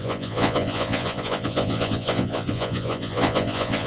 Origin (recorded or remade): remade